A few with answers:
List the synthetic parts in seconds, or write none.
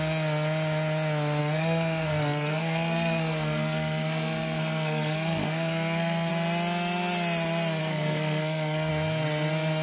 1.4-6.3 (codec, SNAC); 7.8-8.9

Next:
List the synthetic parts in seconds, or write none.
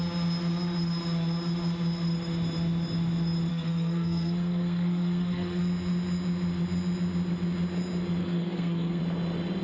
3.5-5.6 (codec, SNAC); 8.2-9.0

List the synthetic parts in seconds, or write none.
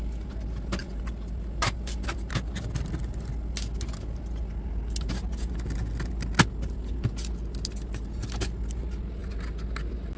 none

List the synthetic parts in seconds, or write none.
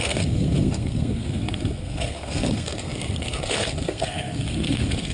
0.0-5.1 (codec, SNAC)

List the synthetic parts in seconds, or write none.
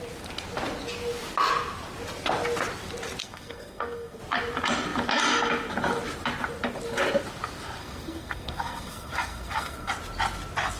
3.2-4.2 (codec, SNAC); 7.8-9.9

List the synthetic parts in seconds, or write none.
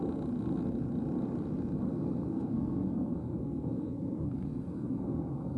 1.9-5.6 (codec, SNAC)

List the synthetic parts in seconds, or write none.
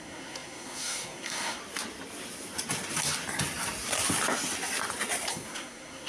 0.0-1.6 (codec, SNAC); 5.3-6.1